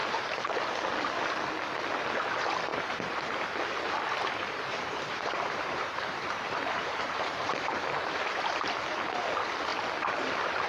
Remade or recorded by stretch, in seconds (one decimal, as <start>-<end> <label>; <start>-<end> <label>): 0.0-0.7 remade; 0.7-2.7 recorded; 2.7-3.6 remade; 3.6-4.7 recorded; 4.7-8.5 remade; 8.5-10.7 recorded